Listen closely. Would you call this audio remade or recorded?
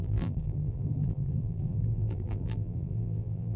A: remade